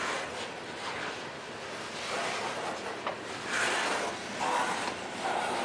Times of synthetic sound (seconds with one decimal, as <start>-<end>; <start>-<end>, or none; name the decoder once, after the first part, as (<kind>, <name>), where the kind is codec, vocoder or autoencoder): none